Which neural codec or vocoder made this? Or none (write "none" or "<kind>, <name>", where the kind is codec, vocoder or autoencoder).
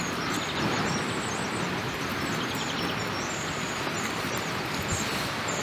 none